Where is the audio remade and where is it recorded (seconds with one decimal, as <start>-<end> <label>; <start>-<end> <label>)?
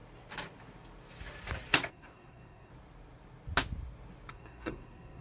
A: 0.0-1.9 recorded; 1.9-2.7 remade; 2.7-4.3 recorded; 4.3-5.2 remade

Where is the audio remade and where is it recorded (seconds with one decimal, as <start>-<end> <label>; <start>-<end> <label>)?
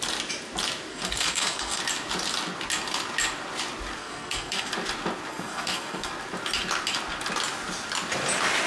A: 0.0-0.9 recorded; 0.9-1.8 remade; 1.8-4.0 recorded; 4.0-4.7 remade; 4.7-5.3 recorded; 5.3-6.1 remade; 6.1-8.7 recorded